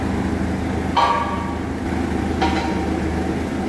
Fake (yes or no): no